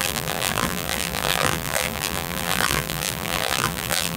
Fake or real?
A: fake